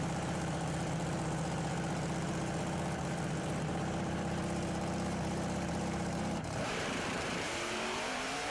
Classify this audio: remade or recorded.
remade